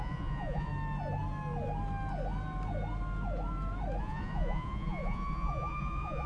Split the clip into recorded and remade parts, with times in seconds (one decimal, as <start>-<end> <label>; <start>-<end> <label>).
0.0-0.7 remade; 0.7-4.0 recorded; 4.0-6.3 remade